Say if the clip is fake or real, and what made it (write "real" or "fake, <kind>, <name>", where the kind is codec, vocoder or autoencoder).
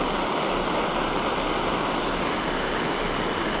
real